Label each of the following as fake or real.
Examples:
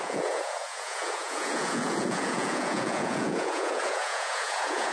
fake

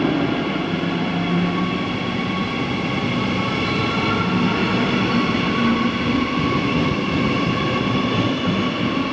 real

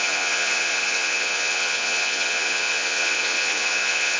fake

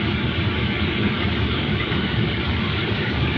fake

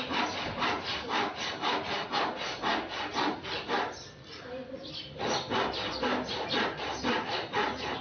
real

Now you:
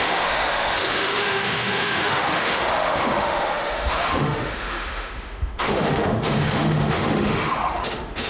fake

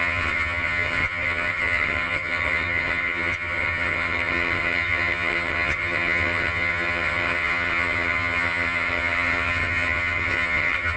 fake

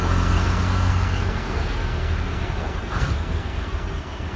fake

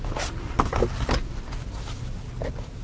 real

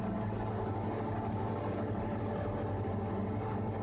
real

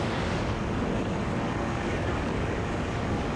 fake